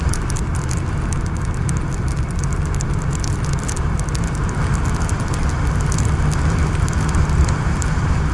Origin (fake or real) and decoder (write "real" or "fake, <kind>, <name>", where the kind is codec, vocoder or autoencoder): real